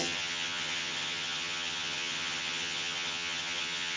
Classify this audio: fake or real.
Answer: fake